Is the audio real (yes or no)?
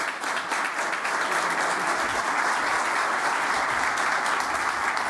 yes